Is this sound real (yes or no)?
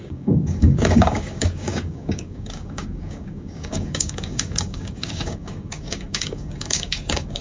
no